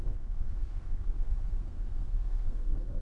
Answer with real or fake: fake